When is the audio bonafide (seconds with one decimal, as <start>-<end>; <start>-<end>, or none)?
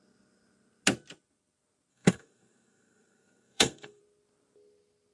0.0-1.9; 4.0-5.1